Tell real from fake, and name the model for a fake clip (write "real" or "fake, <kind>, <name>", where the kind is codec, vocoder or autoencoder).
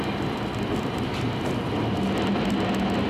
real